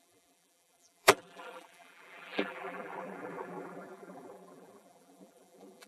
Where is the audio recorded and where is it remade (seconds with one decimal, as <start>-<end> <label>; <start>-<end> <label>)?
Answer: 0.0-5.9 remade